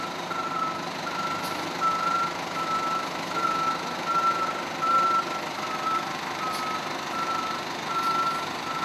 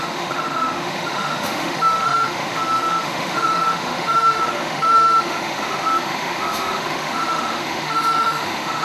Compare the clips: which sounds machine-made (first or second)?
second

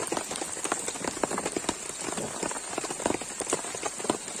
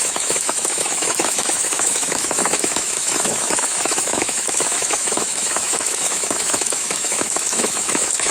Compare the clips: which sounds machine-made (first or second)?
second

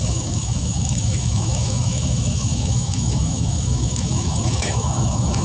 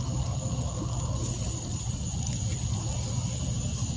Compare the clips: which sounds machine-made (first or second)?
first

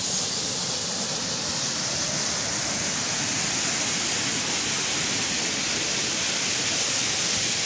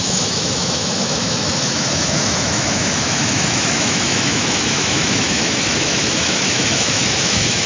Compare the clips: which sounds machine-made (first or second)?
second